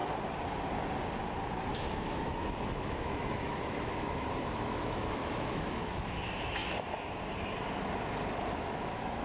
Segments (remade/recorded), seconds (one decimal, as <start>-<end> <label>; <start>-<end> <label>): 0.0-1.7 recorded; 1.7-6.6 remade; 6.6-8.5 recorded; 8.5-9.2 remade